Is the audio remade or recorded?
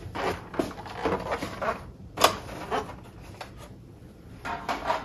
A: recorded